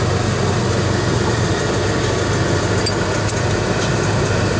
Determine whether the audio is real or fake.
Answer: real